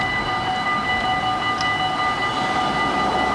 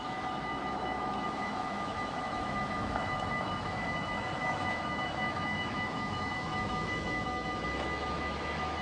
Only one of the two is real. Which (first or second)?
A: first